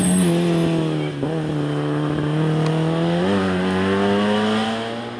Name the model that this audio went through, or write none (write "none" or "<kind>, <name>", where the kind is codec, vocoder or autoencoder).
none